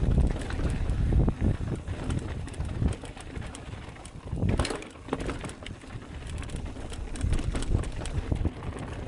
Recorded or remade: recorded